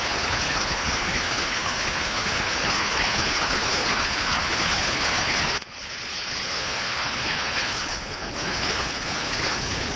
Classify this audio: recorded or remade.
remade